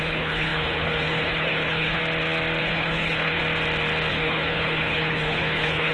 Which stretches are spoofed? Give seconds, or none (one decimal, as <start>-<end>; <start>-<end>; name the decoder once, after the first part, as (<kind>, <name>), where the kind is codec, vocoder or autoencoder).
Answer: 0.0-2.0 (codec, HILCodec); 2.6-3.4; 4.1-5.9